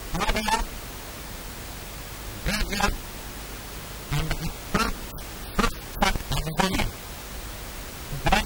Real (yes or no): yes